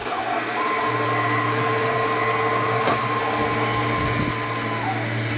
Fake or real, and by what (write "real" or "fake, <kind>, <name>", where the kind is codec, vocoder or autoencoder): real